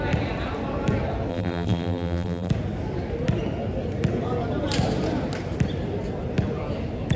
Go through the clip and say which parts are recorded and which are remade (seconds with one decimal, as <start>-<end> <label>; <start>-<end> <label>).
0.0-1.3 recorded; 1.3-2.5 remade; 2.5-7.2 recorded